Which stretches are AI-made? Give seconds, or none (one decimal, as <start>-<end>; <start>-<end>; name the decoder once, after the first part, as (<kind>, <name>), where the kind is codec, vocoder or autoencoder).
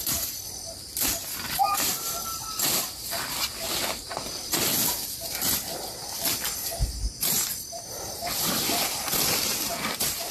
0.0-10.3 (vocoder, BigVGAN v2)